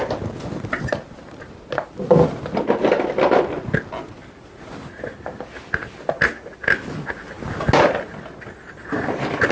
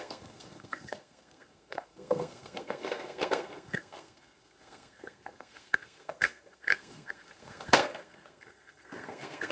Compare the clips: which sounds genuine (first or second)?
first